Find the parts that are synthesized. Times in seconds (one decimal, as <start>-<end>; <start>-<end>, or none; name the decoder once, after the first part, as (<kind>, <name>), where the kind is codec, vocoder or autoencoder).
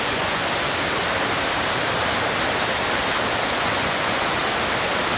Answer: 0.0-0.4 (vocoder, Vocos); 3.5-4.4